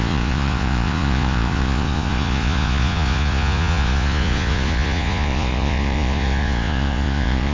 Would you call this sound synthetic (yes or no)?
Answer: yes